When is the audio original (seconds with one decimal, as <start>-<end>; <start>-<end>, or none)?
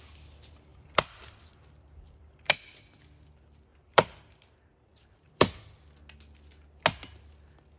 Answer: 0.0-0.7; 2.6-3.7; 4.5-4.9; 5.5-7.8